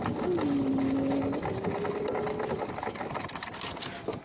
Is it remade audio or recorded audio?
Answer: recorded